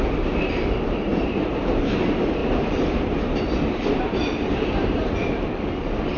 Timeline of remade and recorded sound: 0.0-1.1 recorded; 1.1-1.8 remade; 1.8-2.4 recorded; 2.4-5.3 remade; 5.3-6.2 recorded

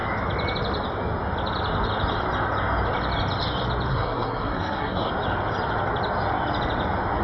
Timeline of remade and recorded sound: 0.0-3.9 recorded; 3.9-5.1 remade; 5.1-7.2 recorded

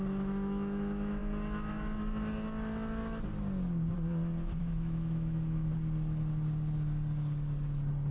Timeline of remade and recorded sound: 0.0-1.2 remade; 1.2-4.6 recorded; 4.6-5.7 remade; 5.7-8.1 recorded

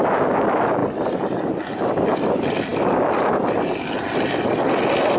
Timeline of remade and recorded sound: 0.0-5.2 recorded